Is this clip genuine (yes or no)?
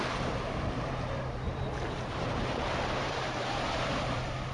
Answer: no